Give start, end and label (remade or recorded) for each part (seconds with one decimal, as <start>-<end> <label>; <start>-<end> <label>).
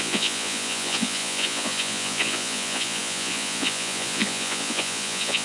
0.0-5.4 remade